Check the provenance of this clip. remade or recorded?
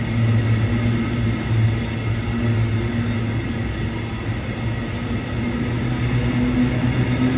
recorded